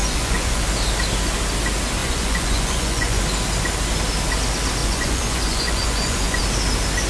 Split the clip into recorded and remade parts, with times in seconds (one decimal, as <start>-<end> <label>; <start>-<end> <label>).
0.0-0.6 remade; 0.6-2.0 recorded; 2.0-3.2 remade; 3.2-4.8 recorded; 4.8-6.4 remade; 6.4-7.1 recorded